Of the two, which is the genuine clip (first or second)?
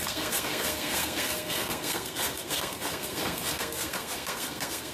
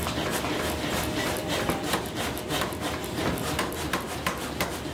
second